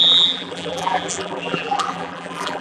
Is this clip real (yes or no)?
no